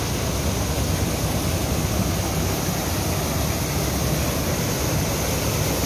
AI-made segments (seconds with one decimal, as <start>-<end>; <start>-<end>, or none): none